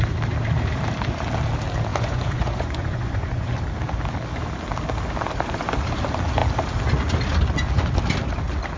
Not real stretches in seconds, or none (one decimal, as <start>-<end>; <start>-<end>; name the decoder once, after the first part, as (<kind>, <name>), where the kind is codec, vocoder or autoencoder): 1.9-3.5 (vocoder, Vocos)